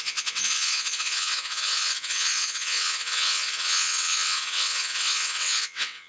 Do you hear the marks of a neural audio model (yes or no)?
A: yes